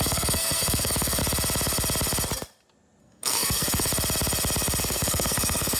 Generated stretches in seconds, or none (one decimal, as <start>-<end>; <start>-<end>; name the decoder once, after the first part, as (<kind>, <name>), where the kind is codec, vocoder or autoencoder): 0.0-1.2 (codec, SNAC); 3.0-3.9; 4.8-5.8